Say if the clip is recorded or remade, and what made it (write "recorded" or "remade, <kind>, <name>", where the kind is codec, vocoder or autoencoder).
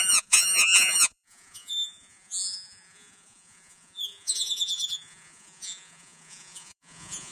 remade, vocoder, Vocos